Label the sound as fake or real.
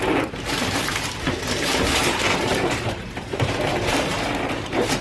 fake